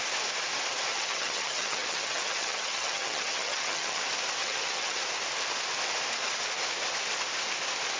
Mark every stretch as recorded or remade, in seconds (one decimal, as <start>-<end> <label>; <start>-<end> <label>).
0.0-0.9 recorded; 0.9-4.0 remade; 4.0-4.4 recorded; 4.4-5.0 remade; 5.0-8.0 recorded